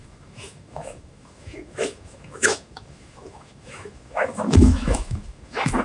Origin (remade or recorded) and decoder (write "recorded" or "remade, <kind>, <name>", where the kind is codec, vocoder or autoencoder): remade, autoencoder, DAC-VAE